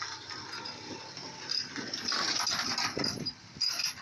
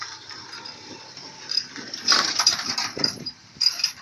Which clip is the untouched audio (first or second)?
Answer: first